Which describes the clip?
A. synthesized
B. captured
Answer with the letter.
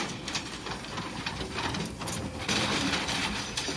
A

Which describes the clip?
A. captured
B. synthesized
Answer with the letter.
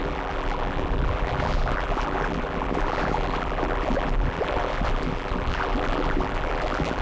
B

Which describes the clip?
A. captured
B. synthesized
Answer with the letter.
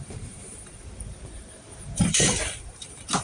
B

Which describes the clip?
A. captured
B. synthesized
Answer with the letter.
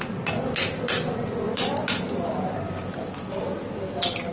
A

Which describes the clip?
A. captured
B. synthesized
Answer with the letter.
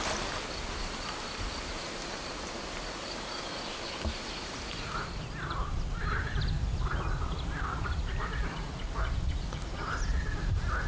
A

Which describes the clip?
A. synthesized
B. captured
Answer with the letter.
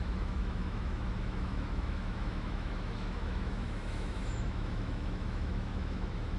A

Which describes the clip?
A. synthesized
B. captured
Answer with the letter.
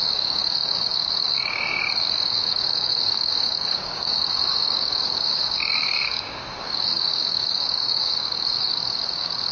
A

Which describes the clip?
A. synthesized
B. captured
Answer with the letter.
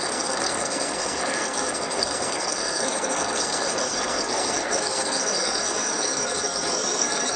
A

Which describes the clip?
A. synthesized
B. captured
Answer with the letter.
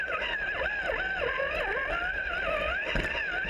A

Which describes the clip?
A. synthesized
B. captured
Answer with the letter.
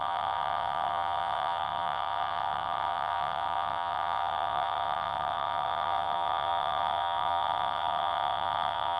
A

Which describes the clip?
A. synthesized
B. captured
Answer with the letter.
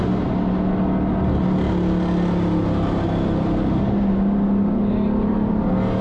B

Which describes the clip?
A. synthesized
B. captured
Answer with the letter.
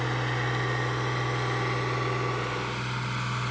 B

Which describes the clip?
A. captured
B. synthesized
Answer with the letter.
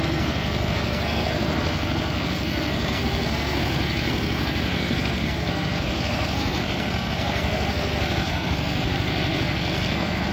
B